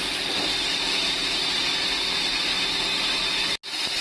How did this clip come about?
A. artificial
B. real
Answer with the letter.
B